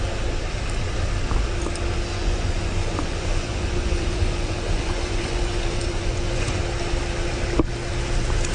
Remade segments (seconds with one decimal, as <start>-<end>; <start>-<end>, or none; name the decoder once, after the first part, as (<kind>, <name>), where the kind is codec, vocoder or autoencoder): 2.1-6.6 (vocoder, Vocos)